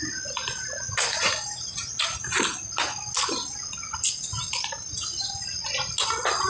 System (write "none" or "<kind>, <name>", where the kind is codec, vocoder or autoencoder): none